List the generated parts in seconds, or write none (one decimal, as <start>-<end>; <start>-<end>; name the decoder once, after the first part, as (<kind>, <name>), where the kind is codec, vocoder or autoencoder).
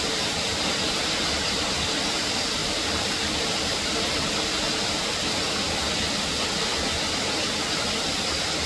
none